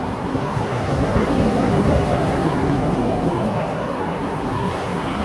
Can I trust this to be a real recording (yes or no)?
no